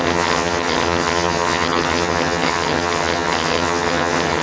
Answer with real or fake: fake